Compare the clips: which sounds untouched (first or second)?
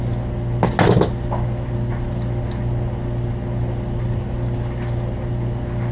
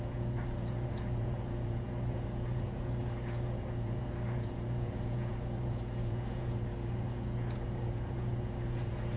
first